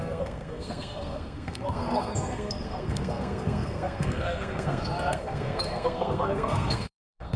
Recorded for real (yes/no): no